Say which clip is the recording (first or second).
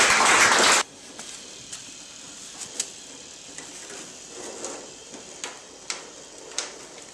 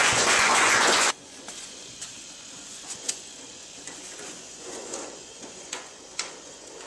first